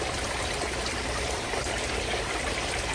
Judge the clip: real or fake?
real